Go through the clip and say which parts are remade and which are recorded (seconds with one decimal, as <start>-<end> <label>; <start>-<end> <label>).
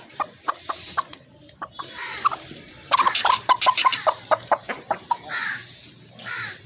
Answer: 0.0-6.7 remade